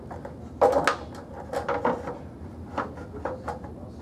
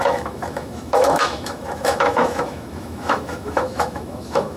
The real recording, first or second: first